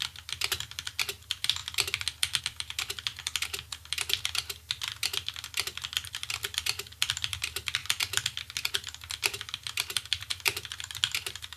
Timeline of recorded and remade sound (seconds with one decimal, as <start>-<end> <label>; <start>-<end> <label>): 0.0-1.6 remade; 1.6-2.4 recorded; 2.4-3.1 remade; 3.1-3.7 recorded; 3.7-7.8 remade; 7.8-8.7 recorded; 8.7-11.6 remade